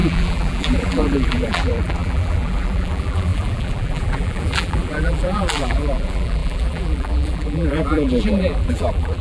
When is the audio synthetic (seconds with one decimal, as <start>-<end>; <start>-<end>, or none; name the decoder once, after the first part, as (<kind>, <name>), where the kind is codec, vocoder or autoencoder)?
0.0-9.2 (vocoder, BigVGAN v2)